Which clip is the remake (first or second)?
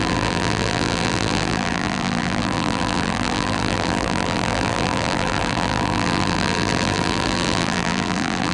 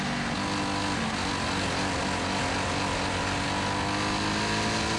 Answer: first